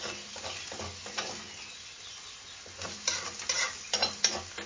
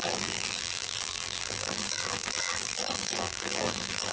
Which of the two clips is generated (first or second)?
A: second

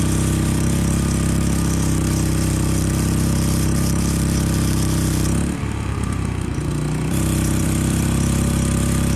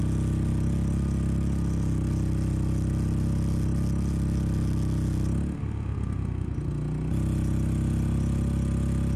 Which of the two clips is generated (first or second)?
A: first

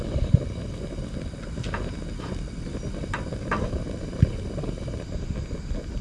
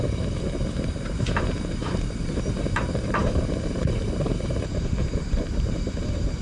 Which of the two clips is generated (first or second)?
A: second